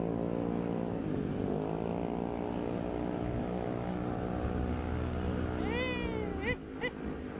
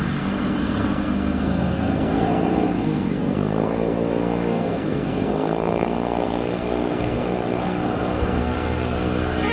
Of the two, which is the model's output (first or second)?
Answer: second